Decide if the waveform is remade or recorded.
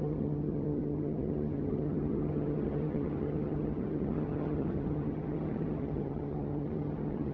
remade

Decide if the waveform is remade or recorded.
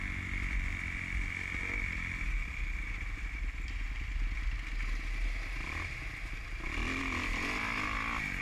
recorded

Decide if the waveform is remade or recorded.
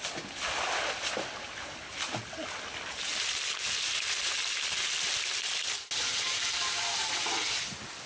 recorded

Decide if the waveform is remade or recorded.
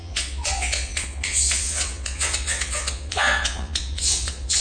remade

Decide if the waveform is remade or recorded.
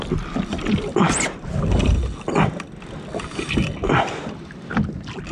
recorded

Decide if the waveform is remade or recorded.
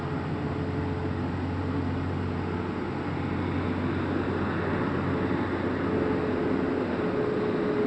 recorded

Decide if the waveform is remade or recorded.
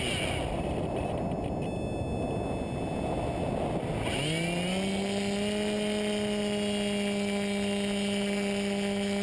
recorded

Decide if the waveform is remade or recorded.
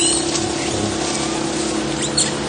recorded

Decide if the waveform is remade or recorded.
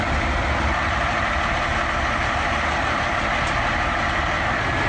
recorded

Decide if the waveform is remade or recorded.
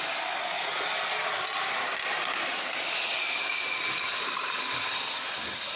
recorded